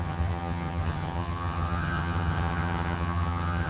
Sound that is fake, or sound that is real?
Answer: fake